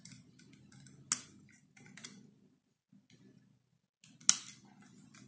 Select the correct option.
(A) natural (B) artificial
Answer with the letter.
A